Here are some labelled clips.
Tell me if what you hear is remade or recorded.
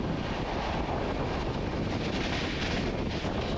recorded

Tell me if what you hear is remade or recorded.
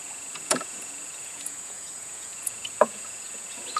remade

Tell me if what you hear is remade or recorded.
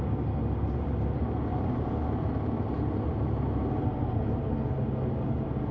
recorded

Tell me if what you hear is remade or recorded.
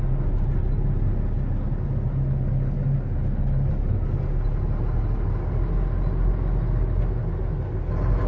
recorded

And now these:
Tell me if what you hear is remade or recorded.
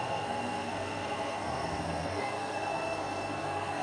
remade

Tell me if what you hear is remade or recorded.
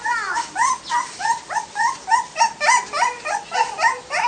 recorded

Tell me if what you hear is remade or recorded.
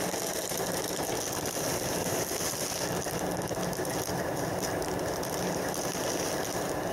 recorded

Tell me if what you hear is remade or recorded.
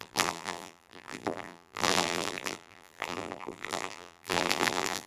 remade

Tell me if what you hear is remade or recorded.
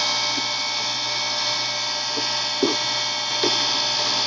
recorded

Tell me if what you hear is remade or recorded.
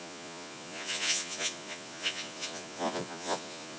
remade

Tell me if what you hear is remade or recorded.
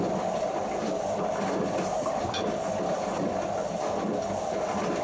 recorded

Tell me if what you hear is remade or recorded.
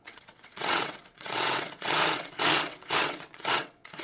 remade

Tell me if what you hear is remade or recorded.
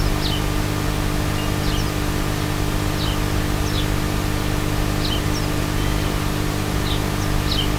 recorded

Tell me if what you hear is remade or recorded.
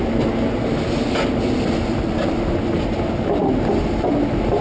recorded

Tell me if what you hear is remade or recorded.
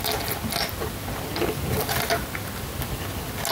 recorded